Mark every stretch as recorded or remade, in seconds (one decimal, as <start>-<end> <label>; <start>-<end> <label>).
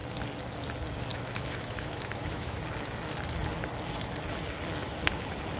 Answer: 0.0-1.1 recorded; 1.1-2.6 remade; 2.6-5.6 recorded